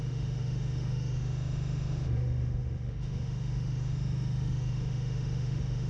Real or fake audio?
fake